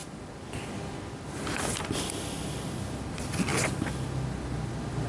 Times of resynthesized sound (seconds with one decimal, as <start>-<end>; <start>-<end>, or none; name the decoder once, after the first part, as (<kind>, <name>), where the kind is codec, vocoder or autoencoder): none